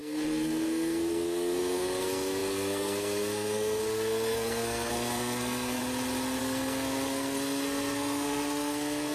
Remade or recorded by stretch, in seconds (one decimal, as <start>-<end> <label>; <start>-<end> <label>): 0.0-5.8 remade; 5.8-6.4 recorded; 6.4-9.1 remade